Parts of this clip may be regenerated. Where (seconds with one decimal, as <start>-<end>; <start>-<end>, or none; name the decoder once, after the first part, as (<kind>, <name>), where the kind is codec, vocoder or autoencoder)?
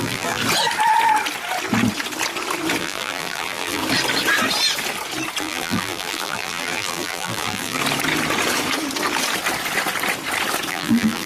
0.0-0.4 (vocoder, BigVGAN v2); 2.8-3.8; 5.4-7.8; 10.7-11.3